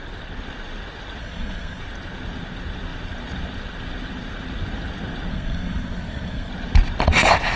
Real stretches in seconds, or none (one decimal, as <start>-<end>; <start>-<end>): 0.0-1.2; 1.8-5.3; 6.5-7.6